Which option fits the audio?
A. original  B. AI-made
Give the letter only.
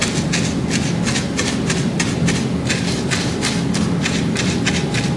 A